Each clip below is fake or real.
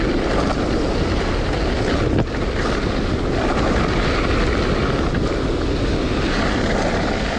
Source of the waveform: real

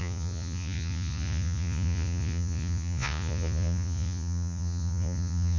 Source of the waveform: fake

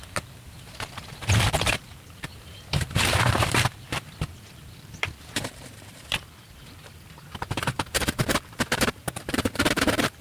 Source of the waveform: fake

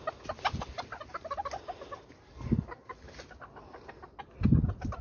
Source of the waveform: real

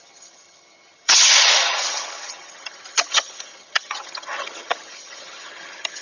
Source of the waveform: fake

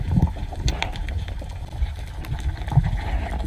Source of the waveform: real